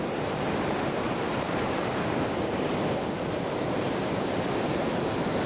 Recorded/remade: remade